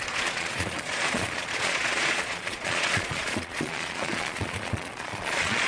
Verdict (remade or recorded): remade